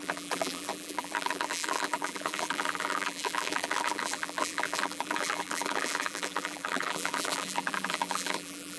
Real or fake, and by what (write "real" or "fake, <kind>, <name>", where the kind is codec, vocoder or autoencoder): fake, vocoder, BigVGAN v2